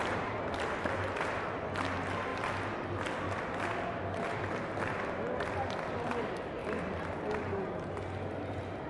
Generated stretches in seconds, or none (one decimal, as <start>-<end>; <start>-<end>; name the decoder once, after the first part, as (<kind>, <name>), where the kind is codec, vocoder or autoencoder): 6.6-7.3 (vocoder, BigVGAN v2)